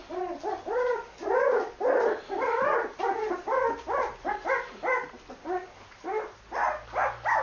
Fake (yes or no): no